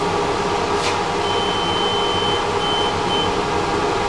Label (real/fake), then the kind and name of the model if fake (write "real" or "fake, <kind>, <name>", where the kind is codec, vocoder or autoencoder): real